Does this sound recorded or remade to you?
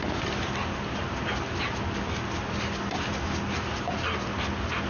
recorded